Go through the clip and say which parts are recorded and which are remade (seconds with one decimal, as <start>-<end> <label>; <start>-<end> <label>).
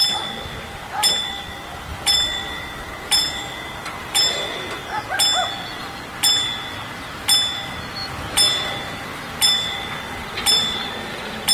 0.0-1.9 recorded; 1.9-4.8 remade; 4.8-8.0 recorded; 8.0-10.9 remade; 10.9-11.5 recorded